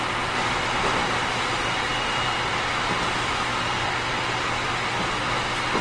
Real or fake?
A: real